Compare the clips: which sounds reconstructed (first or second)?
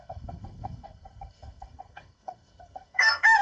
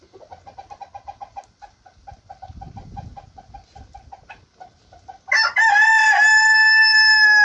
first